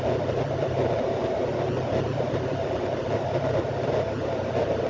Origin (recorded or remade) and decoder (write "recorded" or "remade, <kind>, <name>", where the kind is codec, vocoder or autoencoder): recorded